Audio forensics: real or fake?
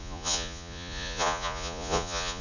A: fake